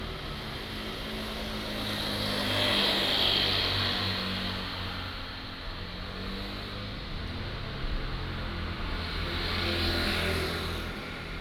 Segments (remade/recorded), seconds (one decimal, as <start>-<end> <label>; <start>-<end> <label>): 0.0-11.4 recorded